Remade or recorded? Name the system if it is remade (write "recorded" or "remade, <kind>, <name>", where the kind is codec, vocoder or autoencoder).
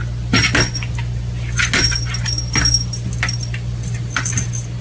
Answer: recorded